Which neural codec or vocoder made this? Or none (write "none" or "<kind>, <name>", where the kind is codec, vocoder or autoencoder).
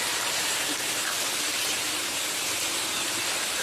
vocoder, BigVGAN v2